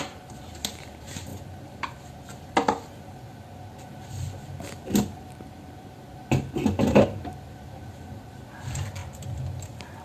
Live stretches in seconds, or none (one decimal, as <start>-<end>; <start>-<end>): 0.0-10.0